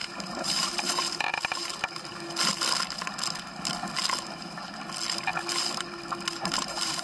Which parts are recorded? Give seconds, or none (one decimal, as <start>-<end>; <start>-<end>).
2.1-6.3